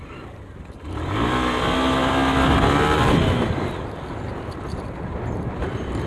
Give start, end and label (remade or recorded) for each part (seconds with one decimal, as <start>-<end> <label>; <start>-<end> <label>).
0.0-6.1 recorded